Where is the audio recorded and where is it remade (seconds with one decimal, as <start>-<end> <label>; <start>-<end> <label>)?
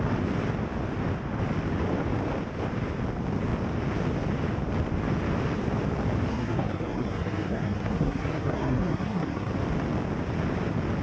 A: 0.0-6.3 recorded; 6.3-9.5 remade; 9.5-11.0 recorded